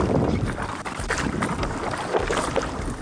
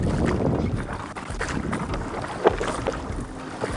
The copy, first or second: first